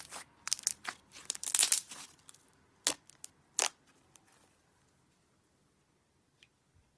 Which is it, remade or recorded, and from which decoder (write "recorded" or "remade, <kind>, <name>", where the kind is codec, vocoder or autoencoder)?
remade, vocoder, BigVGAN v2